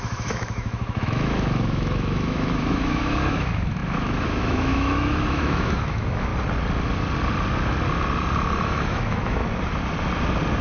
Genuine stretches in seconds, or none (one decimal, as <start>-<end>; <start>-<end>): 6.3-8.6; 9.4-10.6